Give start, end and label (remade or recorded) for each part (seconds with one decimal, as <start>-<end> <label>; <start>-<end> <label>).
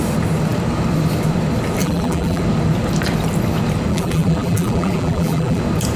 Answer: 0.0-1.8 recorded; 1.8-2.4 remade; 2.4-3.9 recorded; 3.9-5.6 remade; 5.6-6.0 recorded